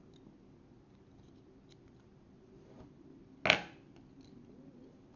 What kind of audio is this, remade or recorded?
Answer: recorded